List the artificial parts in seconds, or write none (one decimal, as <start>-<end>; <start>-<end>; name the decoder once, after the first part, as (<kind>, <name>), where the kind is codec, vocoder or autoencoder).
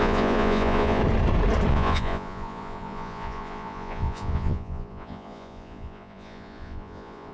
0.0-1.0 (vocoder, Vocos); 1.7-7.3